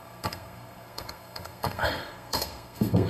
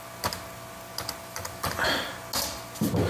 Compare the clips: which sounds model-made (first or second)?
first